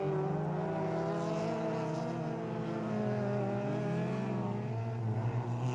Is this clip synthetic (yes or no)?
no